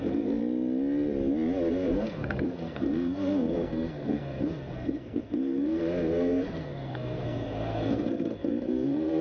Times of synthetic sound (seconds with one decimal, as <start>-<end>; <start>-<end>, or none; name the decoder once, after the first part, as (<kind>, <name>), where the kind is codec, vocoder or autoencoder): 0.0-0.4 (codec, SNAC); 1.7-9.2